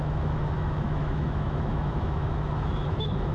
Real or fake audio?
fake